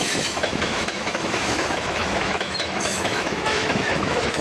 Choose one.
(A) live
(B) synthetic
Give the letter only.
B